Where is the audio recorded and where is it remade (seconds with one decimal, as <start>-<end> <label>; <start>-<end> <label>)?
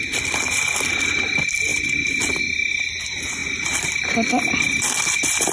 0.0-5.5 recorded